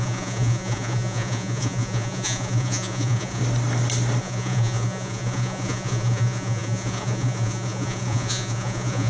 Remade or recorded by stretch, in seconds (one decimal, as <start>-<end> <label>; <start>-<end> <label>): 0.0-3.4 remade; 3.4-4.2 recorded; 4.2-9.1 remade